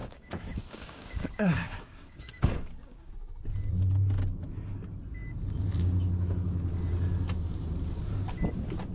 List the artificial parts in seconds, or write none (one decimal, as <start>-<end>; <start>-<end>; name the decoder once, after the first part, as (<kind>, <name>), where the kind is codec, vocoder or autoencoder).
0.0-3.1 (codec, DAC)